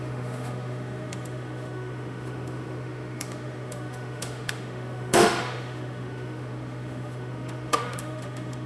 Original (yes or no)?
no